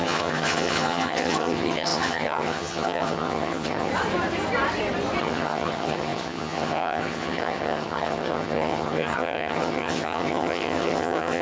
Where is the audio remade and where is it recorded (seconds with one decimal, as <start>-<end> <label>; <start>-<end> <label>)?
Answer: 0.0-3.9 remade; 3.9-5.2 recorded; 5.2-11.4 remade